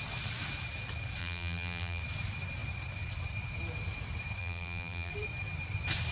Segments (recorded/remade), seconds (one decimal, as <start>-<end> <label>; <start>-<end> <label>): 0.0-1.2 recorded; 1.2-2.0 remade; 2.0-4.4 recorded; 4.4-5.1 remade; 5.1-6.1 recorded